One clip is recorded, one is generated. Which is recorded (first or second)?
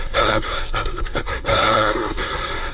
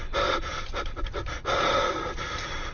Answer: second